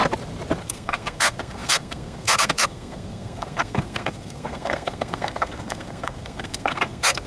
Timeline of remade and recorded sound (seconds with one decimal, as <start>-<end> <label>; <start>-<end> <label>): 0.0-0.6 recorded; 0.6-7.3 remade